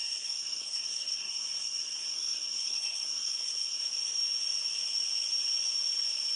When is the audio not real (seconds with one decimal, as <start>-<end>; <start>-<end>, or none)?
0.0-3.8